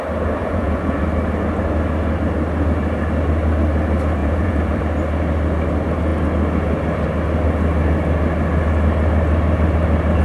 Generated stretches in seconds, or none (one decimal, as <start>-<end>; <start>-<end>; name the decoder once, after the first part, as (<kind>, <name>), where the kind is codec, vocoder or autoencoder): 0.4-1.0 (vocoder, Vocos); 4.2-4.8